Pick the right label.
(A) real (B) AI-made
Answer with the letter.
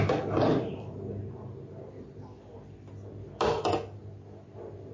A